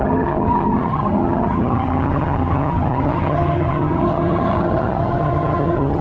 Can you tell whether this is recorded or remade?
remade